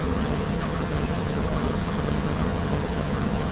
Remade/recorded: remade